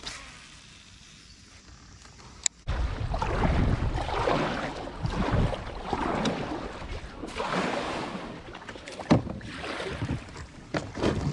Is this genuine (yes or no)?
yes